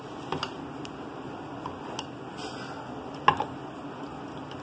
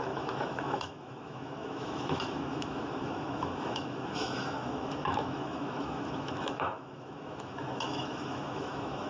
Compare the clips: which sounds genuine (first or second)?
first